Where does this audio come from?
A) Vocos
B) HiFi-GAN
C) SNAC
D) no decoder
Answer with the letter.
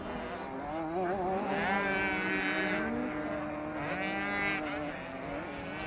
D